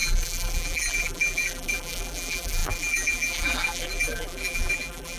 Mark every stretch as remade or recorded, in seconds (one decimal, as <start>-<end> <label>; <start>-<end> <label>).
0.0-5.2 remade